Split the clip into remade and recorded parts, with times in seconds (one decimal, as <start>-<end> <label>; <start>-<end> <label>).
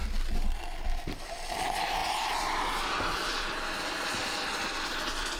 0.0-1.5 recorded; 1.5-5.4 remade